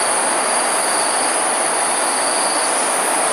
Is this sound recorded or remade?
recorded